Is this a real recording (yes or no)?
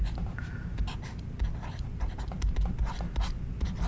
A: no